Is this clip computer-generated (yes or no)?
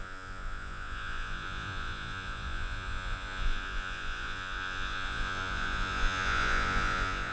yes